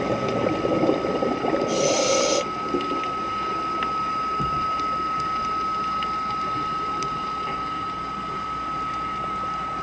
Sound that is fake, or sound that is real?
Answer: real